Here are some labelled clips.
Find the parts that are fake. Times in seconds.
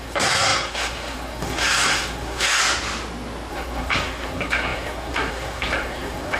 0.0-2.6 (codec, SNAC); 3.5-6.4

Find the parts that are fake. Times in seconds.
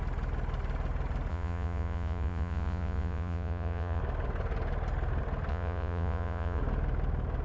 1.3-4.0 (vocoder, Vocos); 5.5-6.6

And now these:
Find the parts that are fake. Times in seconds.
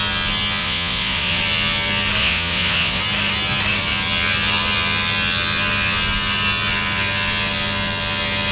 0.6-1.4 (vocoder, Vocos); 2.2-3.0